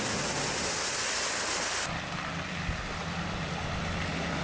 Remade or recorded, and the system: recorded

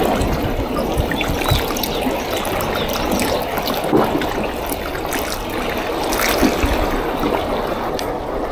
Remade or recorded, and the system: recorded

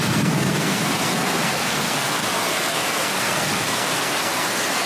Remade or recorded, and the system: remade, codec, SNAC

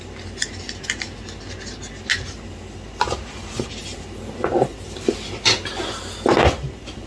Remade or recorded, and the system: recorded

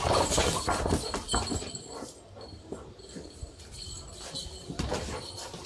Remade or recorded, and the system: recorded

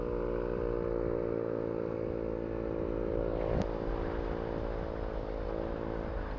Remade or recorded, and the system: recorded